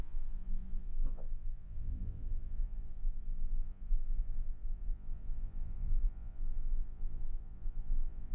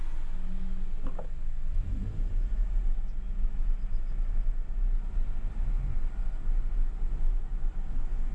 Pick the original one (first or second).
second